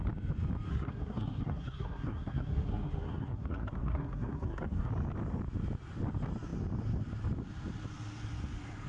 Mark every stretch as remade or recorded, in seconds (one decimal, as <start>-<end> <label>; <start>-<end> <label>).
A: 0.0-0.7 recorded; 0.7-4.9 remade; 4.9-8.9 recorded